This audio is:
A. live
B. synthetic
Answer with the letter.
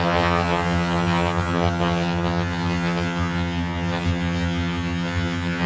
B